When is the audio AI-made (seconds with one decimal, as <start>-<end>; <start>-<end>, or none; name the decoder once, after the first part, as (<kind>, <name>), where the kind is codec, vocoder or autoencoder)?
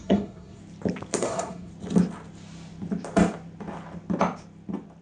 0.0-0.6 (codec, SNAC); 1.2-1.7